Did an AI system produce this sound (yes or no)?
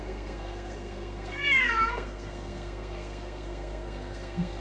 yes